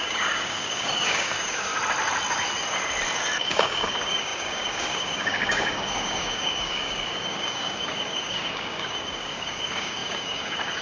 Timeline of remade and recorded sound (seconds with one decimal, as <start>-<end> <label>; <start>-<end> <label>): 0.0-1.7 remade; 1.7-3.4 recorded; 3.4-10.8 remade